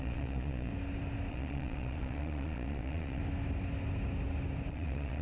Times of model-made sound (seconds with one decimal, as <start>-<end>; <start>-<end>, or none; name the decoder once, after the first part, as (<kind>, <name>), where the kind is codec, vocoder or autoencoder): 0.0-0.7 (vocoder, Vocos); 1.3-3.2; 4.7-5.2